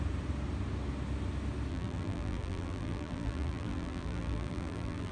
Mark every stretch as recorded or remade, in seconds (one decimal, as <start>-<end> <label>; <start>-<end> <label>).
0.0-1.7 recorded; 1.7-5.1 remade

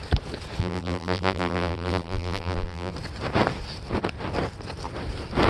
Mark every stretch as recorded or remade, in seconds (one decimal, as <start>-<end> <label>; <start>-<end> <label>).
0.0-0.6 recorded; 0.6-2.9 remade; 2.9-5.5 recorded

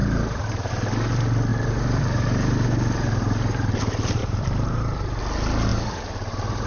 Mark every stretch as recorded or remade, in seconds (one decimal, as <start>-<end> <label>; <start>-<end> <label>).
0.0-0.7 remade; 0.7-1.5 recorded; 1.5-3.8 remade; 3.8-4.2 recorded; 4.2-5.2 remade; 5.2-5.7 recorded; 5.7-6.7 remade